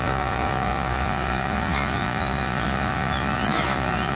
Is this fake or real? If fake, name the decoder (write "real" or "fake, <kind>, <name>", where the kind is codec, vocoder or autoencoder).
fake, vocoder, Vocos